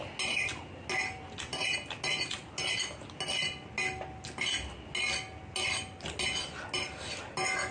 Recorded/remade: recorded